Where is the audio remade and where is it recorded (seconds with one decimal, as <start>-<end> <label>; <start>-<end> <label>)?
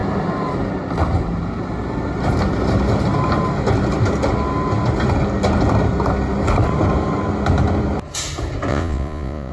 0.0-8.7 recorded; 8.7-9.5 remade